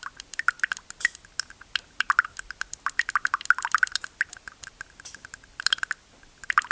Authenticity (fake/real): real